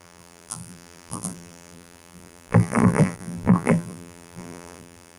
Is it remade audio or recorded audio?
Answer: remade